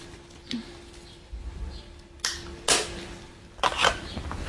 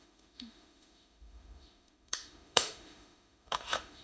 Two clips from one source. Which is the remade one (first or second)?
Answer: second